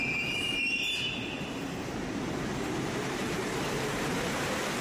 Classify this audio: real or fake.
fake